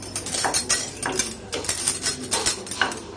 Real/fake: real